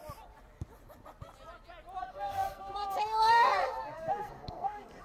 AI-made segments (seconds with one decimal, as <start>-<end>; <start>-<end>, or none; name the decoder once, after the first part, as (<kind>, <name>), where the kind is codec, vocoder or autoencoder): 2.0-5.0 (codec, SNAC)